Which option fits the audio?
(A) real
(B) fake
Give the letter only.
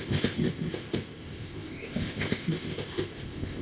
B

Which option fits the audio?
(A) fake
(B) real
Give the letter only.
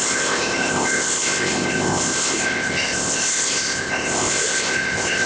A